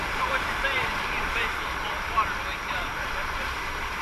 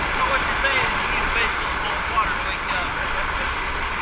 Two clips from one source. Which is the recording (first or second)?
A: second